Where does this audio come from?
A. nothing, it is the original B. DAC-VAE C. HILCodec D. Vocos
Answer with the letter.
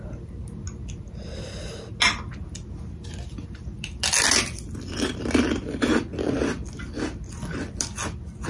A